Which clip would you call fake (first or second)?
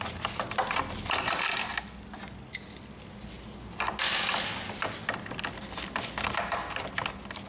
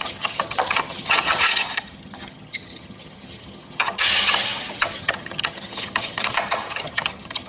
second